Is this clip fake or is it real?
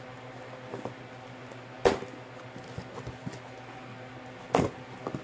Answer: real